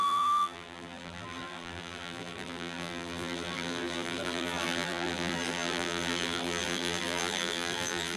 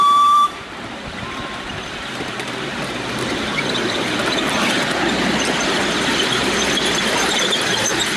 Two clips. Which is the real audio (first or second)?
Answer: second